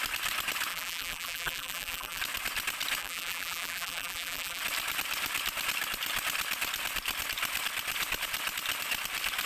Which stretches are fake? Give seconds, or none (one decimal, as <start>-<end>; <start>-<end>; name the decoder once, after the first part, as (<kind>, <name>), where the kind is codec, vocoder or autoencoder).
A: 0.7-2.2 (vocoder, BigVGAN v2); 3.0-4.6